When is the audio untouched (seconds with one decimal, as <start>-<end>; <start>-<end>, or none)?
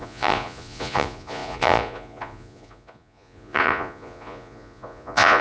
none